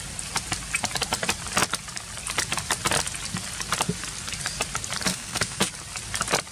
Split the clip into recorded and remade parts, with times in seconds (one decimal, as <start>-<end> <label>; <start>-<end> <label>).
0.0-5.1 recorded; 5.1-5.7 remade; 5.7-6.5 recorded